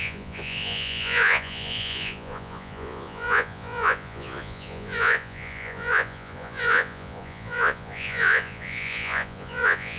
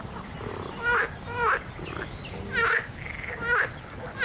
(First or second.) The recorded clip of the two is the second